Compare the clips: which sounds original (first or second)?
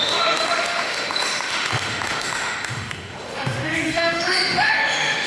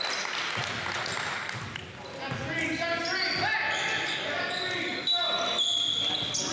second